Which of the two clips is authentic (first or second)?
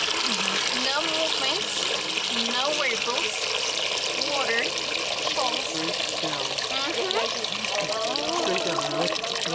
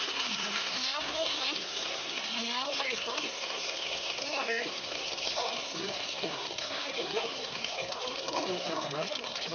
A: first